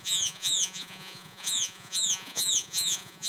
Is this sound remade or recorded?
remade